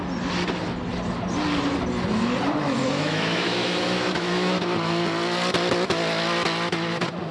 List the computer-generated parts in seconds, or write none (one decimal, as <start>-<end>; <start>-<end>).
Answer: 2.8-4.5